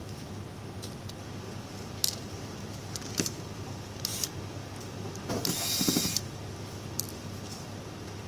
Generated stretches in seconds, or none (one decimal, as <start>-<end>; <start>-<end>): none